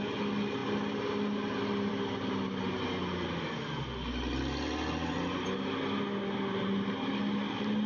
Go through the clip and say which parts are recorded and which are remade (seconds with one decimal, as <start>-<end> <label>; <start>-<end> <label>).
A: 0.0-7.9 recorded